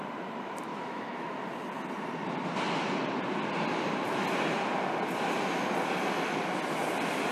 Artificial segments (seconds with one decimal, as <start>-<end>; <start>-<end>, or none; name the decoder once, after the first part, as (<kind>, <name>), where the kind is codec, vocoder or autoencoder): 0.7-1.3 (autoencoder, DAC-VAE)